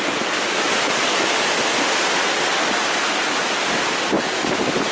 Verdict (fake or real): real